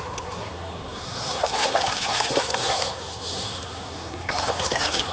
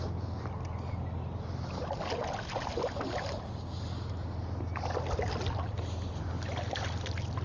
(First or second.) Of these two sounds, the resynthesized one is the first